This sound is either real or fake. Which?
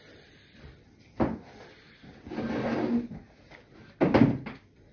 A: real